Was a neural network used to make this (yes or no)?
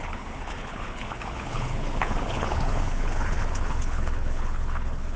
yes